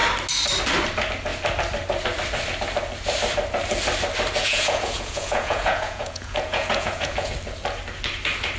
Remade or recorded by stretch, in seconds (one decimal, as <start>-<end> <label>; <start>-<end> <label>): 0.0-4.4 recorded; 4.4-7.3 remade; 7.3-8.6 recorded